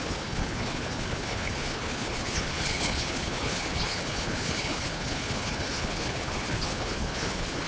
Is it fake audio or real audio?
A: fake